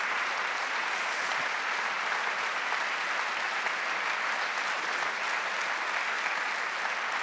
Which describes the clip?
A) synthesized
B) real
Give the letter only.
B